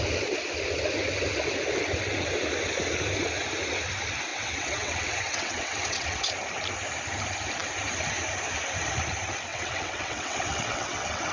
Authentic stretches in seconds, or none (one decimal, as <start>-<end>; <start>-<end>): 0.0-4.3; 6.3-9.5